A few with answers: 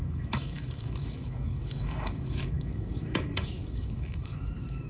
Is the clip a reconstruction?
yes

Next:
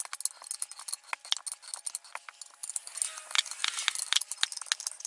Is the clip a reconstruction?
no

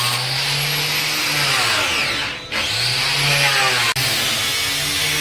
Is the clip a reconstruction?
no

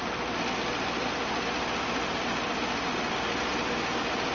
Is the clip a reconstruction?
no